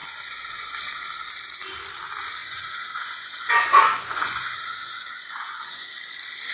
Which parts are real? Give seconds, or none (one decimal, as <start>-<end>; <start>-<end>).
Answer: 0.7-2.4; 5.9-6.5